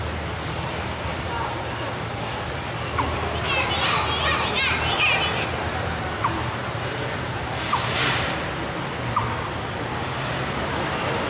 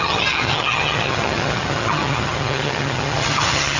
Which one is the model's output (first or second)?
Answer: second